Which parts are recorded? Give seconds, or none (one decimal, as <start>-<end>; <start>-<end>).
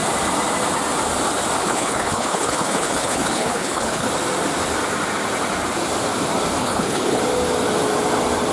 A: 0.0-1.6; 4.1-6.6; 7.2-8.5